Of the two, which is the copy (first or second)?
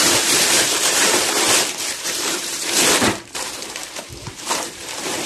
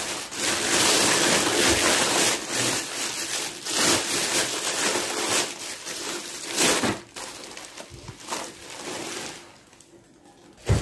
first